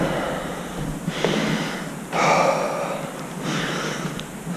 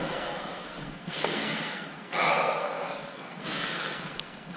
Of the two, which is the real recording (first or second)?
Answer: first